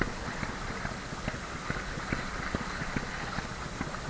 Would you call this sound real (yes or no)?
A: yes